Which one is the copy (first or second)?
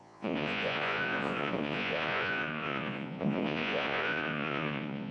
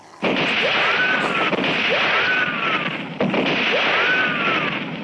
first